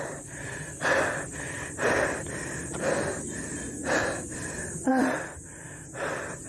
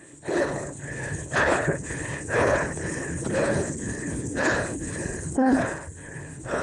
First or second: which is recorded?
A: first